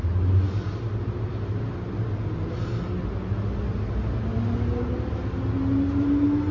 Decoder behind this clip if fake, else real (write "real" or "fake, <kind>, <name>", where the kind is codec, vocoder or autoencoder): real